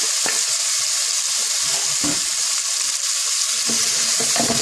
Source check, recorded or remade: recorded